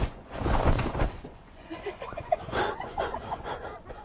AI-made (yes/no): yes